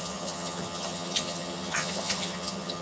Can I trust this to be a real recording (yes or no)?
no